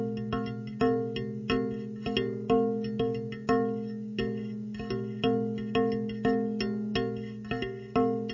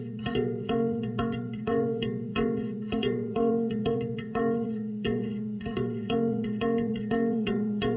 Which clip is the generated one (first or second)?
second